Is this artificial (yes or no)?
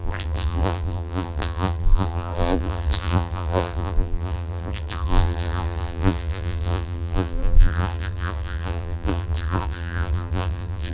yes